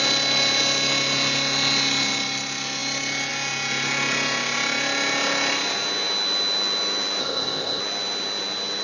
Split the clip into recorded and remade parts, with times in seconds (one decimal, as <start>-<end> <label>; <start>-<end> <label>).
0.0-7.2 recorded; 7.2-7.8 remade; 7.8-8.8 recorded